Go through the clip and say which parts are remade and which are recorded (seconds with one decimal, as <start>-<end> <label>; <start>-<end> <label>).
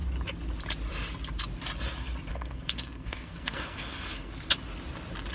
0.0-2.3 recorded; 2.3-4.3 remade; 4.3-5.3 recorded